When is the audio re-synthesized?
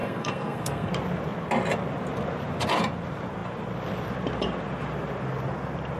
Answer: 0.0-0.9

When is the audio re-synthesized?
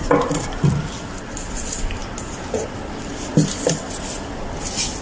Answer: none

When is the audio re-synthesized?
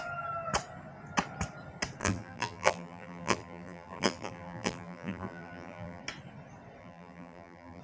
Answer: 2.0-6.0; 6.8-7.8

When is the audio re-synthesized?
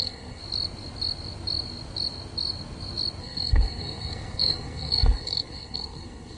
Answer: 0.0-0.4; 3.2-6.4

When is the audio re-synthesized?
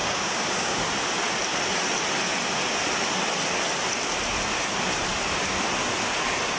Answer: 0.0-0.8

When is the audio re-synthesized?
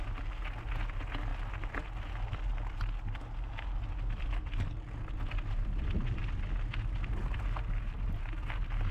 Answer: none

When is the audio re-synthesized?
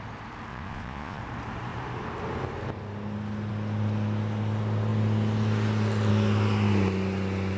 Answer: 0.5-1.2